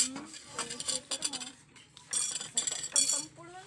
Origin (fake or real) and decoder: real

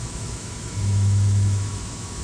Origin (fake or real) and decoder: fake, autoencoder, DAC-VAE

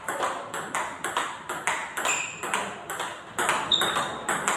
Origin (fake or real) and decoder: real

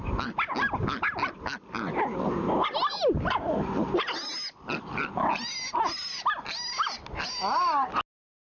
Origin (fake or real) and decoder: real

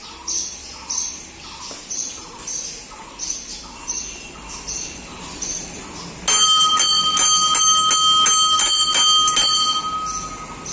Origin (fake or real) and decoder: real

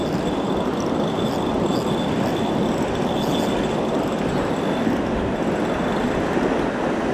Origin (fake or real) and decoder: real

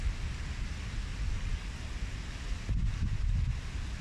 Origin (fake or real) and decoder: real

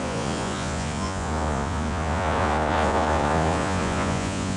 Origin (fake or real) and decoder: fake, vocoder, Vocos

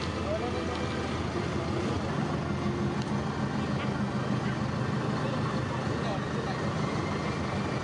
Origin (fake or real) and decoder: real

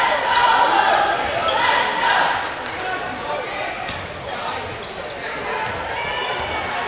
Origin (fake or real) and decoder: real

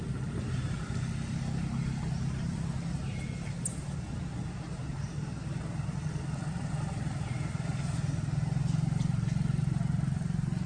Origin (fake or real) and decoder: real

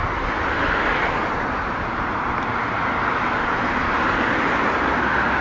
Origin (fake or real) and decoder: real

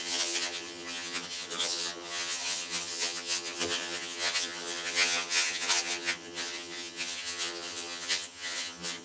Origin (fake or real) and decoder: fake, vocoder, HiFi-GAN